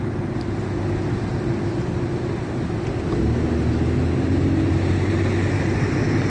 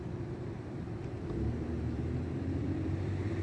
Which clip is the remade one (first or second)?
second